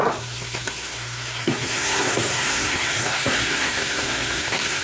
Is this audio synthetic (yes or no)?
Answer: yes